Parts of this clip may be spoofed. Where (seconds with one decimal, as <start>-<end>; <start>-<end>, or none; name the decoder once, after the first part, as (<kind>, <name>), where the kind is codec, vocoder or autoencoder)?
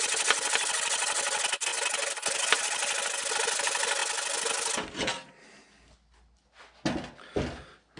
none